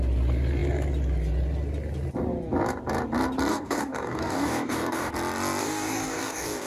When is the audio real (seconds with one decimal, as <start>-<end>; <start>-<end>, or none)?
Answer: 0.0-3.5; 5.1-5.6